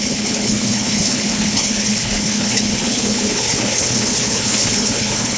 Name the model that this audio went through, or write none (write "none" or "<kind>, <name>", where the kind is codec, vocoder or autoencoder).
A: codec, HILCodec